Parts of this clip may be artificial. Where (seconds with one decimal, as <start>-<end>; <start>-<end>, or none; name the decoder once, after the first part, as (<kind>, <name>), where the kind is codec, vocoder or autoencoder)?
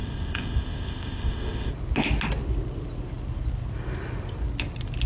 0.0-1.7 (codec, ZipCodec)